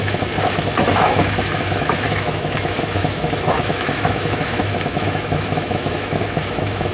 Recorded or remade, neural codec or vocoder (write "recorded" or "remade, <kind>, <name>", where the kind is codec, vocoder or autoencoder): remade, autoencoder, DAC-VAE